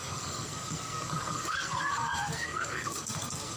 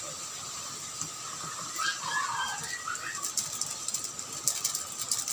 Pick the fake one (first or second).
first